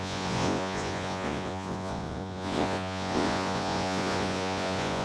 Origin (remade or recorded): remade